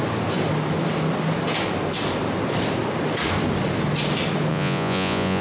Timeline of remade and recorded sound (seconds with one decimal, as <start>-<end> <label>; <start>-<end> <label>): 0.0-4.5 recorded; 4.5-5.4 remade